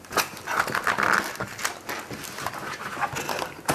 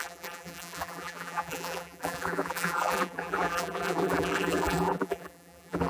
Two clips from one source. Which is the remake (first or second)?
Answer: second